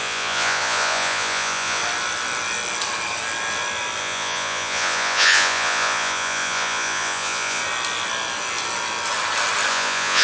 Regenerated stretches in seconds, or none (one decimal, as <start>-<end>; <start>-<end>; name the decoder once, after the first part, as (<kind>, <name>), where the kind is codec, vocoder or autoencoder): 0.0-1.8 (vocoder, Vocos); 4.0-7.6; 9.7-10.2